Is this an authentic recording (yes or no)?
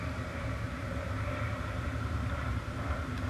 no